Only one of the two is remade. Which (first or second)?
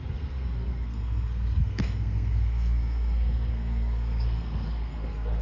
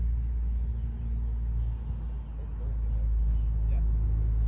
first